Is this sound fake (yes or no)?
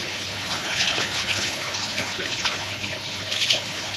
yes